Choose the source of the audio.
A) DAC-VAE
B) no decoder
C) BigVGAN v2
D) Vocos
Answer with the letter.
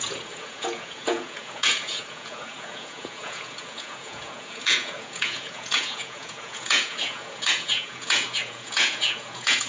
D